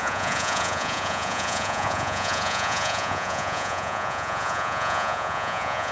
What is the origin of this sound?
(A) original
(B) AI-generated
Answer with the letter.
B